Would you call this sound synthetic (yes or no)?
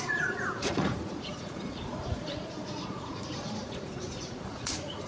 yes